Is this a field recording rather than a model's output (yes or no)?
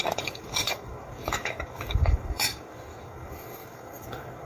no